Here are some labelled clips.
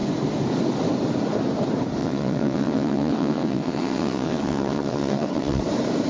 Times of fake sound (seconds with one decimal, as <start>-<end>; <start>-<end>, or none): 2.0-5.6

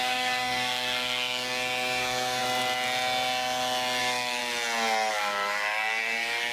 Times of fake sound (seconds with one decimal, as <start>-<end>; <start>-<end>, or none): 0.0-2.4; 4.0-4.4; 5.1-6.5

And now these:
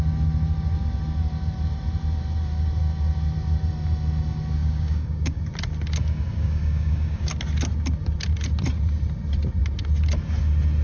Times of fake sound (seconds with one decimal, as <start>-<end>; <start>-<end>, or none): 4.6-5.4; 6.3-7.3